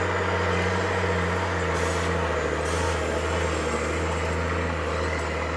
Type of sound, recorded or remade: recorded